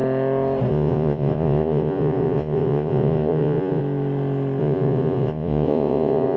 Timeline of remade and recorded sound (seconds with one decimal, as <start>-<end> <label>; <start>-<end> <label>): 0.0-0.7 recorded; 0.7-3.8 remade; 3.8-4.6 recorded; 4.6-6.4 remade